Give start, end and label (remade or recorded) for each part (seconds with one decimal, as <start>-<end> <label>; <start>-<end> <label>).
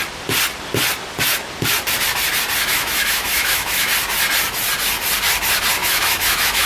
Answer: 0.0-2.7 recorded; 2.7-3.9 remade; 3.9-5.8 recorded; 5.8-6.7 remade